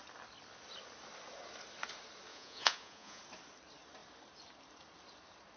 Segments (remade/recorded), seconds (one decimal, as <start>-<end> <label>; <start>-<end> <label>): 0.0-2.3 recorded; 2.3-3.2 remade; 3.2-5.6 recorded